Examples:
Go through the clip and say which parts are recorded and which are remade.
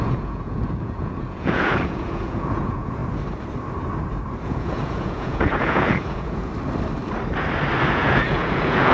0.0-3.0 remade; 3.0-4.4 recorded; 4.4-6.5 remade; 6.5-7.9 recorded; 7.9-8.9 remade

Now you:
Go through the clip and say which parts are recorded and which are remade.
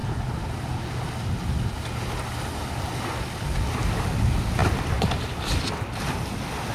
0.0-6.7 recorded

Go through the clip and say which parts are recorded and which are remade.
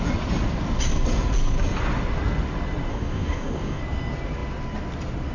0.0-2.9 recorded; 2.9-3.8 remade; 3.8-5.3 recorded